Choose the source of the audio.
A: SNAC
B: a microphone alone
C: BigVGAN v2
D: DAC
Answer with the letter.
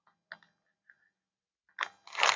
B